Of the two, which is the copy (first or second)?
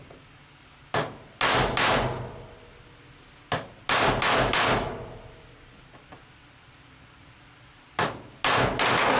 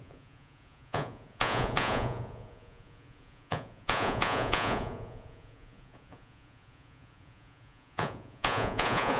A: second